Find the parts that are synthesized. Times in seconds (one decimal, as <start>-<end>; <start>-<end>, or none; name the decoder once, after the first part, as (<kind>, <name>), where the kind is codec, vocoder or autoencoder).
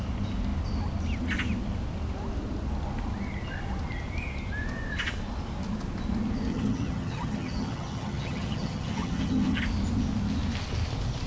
6.5-9.6 (vocoder, HiFi-GAN)